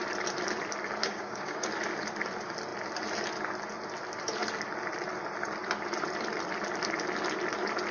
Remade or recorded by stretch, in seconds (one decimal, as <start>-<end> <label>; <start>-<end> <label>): 0.0-1.0 recorded; 1.0-1.7 remade; 1.7-7.9 recorded